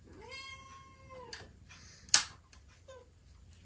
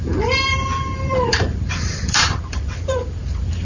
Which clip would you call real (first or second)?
first